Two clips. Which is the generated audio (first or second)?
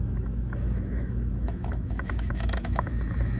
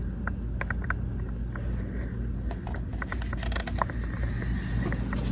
first